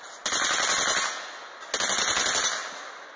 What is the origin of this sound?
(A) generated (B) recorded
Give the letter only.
B